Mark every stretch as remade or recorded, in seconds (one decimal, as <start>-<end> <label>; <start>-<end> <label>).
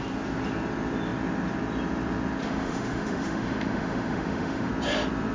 0.0-2.4 recorded; 2.4-4.7 remade; 4.7-5.3 recorded